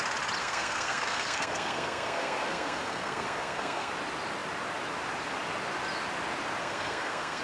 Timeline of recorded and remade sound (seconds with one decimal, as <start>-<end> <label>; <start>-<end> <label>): 0.0-0.4 recorded; 0.4-3.9 remade; 3.9-6.6 recorded; 6.6-7.4 remade